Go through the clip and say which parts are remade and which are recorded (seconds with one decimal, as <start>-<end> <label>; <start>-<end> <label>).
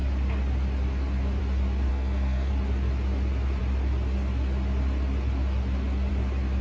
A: 0.0-1.9 recorded; 1.9-2.5 remade; 2.5-6.6 recorded